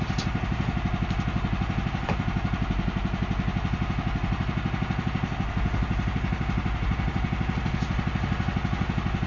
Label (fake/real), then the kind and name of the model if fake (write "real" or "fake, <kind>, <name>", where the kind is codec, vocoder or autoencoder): real